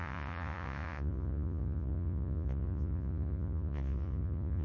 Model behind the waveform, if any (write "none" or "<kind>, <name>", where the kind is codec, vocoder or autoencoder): vocoder, Vocos